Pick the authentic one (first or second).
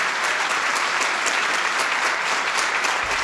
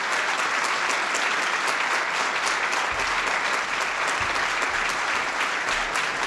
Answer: second